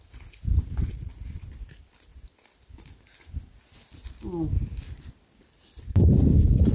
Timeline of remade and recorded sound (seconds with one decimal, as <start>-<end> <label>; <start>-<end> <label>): 0.0-6.7 recorded